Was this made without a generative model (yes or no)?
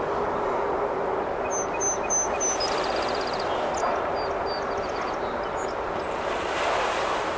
yes